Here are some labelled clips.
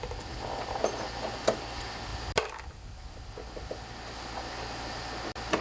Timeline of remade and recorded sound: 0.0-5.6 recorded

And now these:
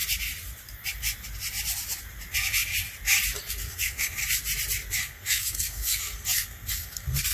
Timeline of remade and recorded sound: 0.0-3.5 recorded; 3.5-4.2 remade; 4.2-5.0 recorded; 5.0-7.3 remade

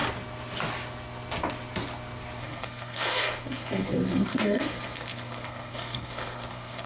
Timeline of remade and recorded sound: 0.0-2.4 recorded; 2.4-6.9 remade

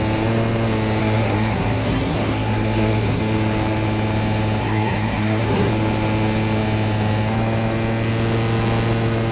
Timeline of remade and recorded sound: 0.0-1.0 recorded; 1.0-3.2 remade; 3.2-4.6 recorded; 4.6-5.7 remade; 5.7-9.3 recorded

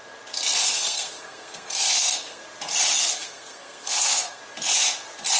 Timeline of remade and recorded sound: 0.0-0.6 recorded; 0.6-2.4 remade; 2.4-3.0 recorded; 3.0-4.4 remade; 4.4-5.4 recorded